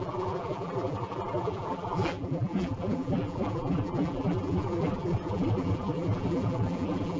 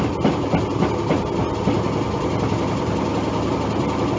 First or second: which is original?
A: second